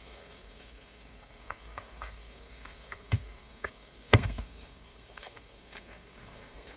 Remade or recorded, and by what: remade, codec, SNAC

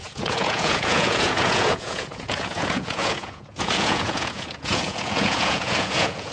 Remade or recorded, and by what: remade, vocoder, Vocos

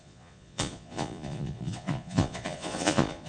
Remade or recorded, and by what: remade, vocoder, Vocos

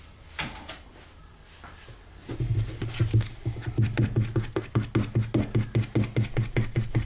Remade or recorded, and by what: recorded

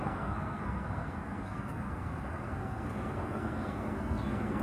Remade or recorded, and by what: remade, codec, SNAC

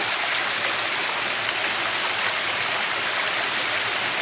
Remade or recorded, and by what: recorded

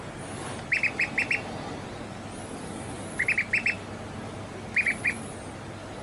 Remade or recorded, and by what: recorded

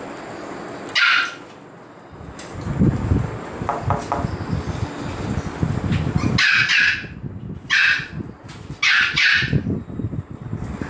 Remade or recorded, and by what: recorded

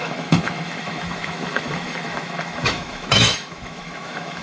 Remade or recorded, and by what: remade, autoencoder, DAC-VAE